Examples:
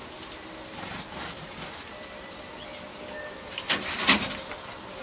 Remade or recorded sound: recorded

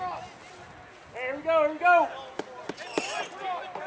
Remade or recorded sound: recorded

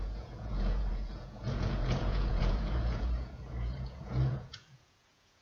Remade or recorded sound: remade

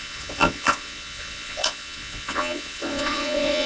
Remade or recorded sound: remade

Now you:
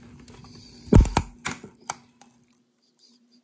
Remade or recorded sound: recorded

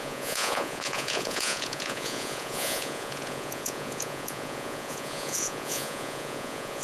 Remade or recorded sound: remade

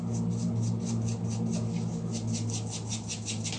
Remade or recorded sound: recorded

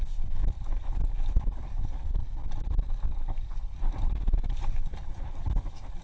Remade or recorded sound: recorded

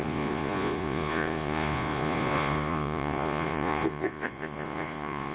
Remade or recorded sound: remade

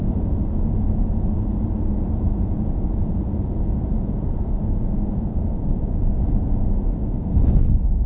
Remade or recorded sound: remade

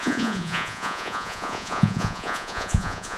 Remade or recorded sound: remade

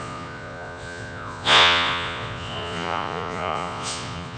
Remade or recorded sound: remade